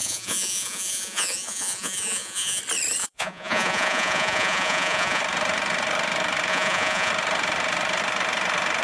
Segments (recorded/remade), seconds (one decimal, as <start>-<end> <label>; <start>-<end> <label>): 0.0-2.6 remade; 2.6-3.0 recorded; 3.0-5.2 remade; 5.2-6.5 recorded; 6.5-7.1 remade; 7.1-8.8 recorded